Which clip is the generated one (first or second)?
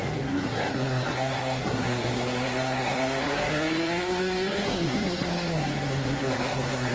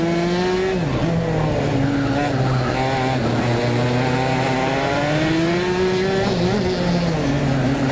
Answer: first